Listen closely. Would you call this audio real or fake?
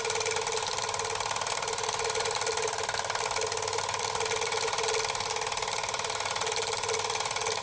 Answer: real